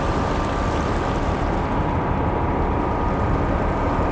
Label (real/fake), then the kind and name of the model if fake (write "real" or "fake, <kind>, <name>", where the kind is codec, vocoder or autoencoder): real